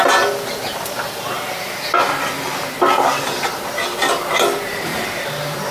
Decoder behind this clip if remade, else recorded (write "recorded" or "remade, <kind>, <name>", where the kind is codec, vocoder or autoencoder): recorded